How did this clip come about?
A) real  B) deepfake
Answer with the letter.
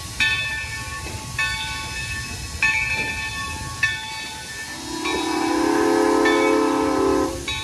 A